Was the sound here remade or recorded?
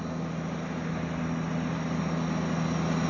recorded